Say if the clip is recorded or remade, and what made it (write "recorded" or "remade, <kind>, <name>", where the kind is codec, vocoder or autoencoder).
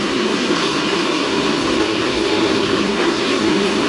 remade, codec, SNAC